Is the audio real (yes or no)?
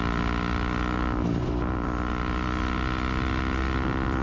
yes